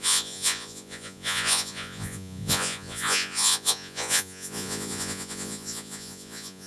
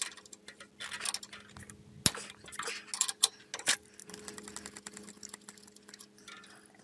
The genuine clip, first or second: second